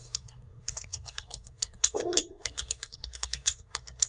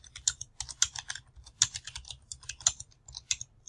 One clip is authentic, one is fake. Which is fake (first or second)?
first